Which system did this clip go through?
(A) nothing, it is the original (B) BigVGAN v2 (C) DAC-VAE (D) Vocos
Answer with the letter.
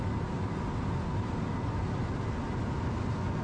A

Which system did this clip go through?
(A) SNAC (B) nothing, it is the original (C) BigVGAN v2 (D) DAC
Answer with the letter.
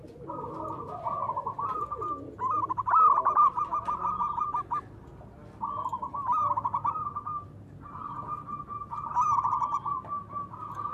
B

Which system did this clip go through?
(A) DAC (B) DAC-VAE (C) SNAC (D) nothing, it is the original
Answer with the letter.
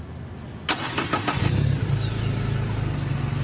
D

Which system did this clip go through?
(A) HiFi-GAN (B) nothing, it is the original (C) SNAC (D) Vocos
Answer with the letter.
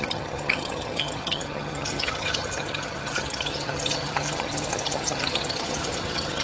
A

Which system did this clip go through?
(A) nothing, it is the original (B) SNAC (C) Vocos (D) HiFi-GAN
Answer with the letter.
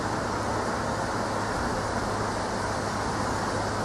A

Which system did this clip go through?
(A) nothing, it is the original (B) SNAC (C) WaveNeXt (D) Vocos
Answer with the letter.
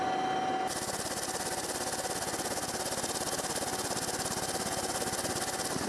A